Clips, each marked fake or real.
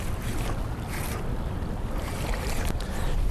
real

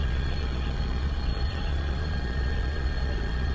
fake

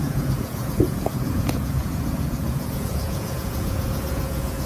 fake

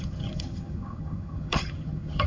fake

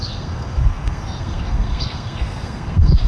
fake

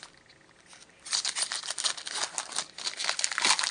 real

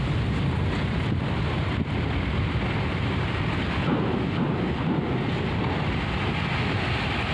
real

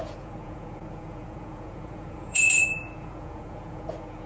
fake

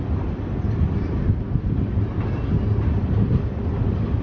real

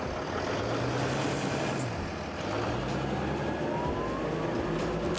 real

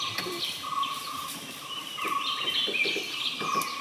real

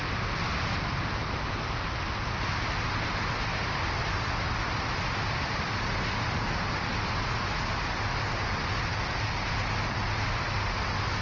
real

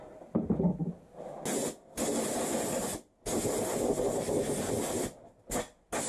real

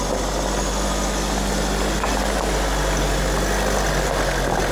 real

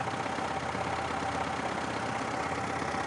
real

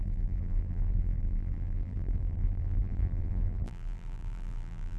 fake